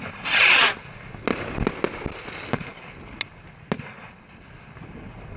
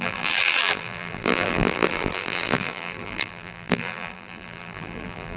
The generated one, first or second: second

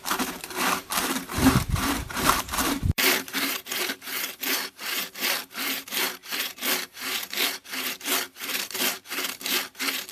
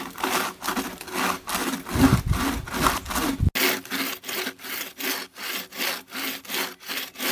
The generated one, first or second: first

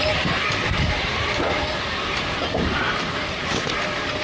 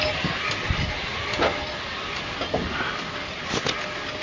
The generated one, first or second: first